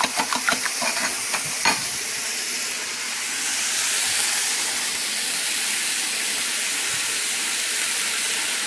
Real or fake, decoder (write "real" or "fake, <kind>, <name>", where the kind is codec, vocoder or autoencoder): real